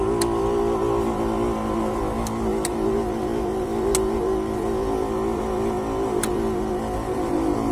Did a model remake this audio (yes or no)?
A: no